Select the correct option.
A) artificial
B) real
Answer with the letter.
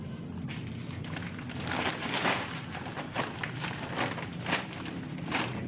B